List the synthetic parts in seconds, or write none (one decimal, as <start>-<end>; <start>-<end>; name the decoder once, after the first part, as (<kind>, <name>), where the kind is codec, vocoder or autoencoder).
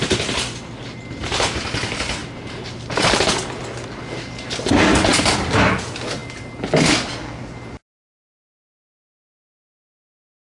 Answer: 2.2-3.2 (vocoder, BigVGAN v2); 5.1-5.7